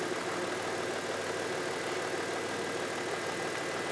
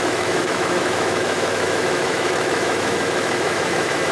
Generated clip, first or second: second